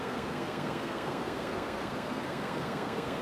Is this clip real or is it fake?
fake